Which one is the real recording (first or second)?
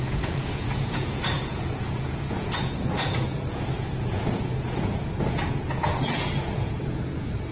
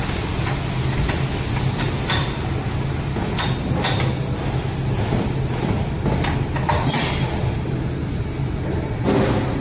second